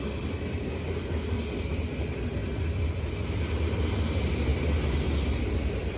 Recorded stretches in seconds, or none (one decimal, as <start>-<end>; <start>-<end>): 0.0-6.0